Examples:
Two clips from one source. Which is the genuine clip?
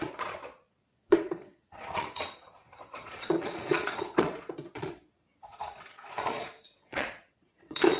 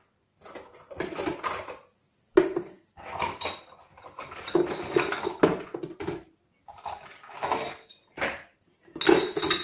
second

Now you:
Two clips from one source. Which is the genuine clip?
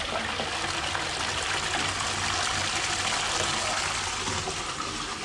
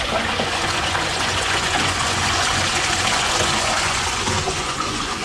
first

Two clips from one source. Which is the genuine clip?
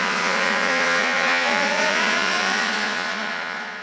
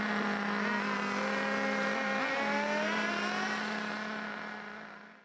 second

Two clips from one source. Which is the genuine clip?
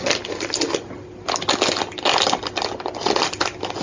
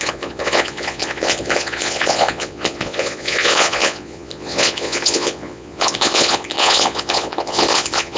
first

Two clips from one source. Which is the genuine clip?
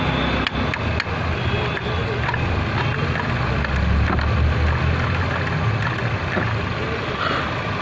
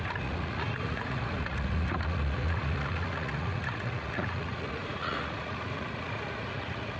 first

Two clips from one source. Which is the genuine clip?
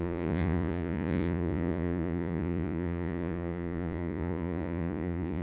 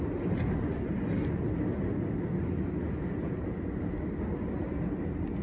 second